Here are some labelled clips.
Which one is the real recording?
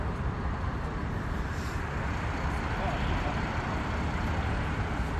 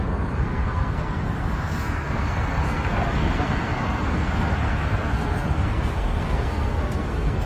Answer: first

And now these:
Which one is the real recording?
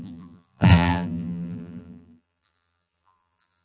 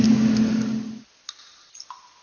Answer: second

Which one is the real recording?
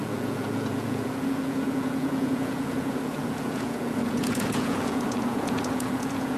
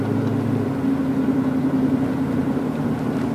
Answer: second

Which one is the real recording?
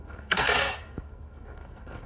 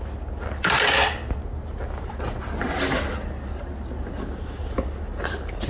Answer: second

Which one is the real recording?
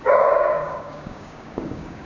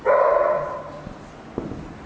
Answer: second